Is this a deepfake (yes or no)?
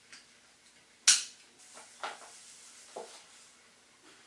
no